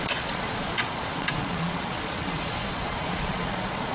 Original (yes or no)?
no